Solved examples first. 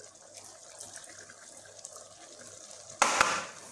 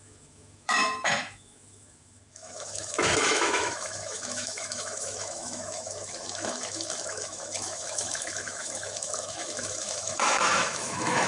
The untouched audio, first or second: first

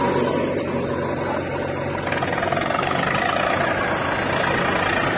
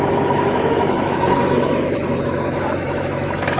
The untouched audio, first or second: first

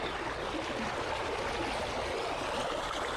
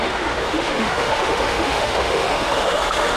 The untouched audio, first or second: first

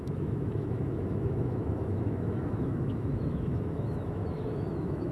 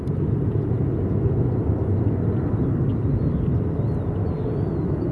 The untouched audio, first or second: second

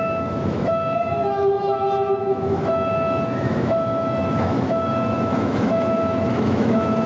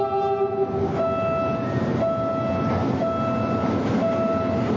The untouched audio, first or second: second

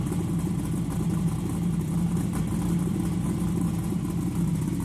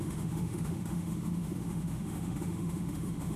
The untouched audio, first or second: first